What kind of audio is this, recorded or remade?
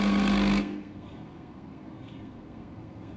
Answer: remade